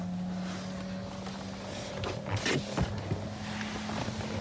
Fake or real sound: real